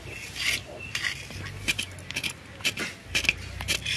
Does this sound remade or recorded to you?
recorded